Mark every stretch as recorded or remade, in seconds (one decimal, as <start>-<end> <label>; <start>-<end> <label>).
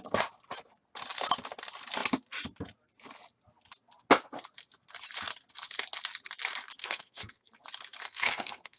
0.0-6.8 recorded; 6.8-7.5 remade; 7.5-8.0 recorded; 8.0-8.8 remade